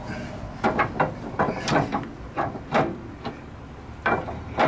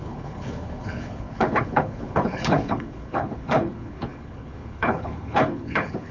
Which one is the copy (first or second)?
second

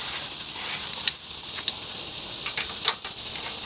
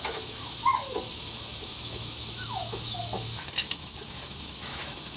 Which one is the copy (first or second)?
second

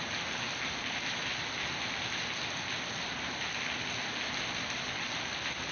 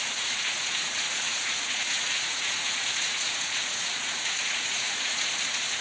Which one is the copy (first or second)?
second